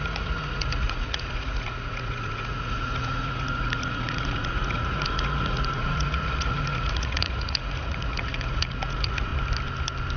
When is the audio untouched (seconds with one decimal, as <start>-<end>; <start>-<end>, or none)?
9.3-10.2